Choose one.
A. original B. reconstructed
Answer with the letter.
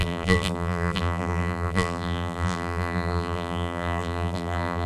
B